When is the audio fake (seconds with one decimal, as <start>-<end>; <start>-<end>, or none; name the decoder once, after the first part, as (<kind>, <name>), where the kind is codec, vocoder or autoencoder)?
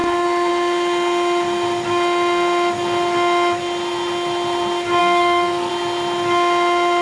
5.0-5.7 (codec, SNAC)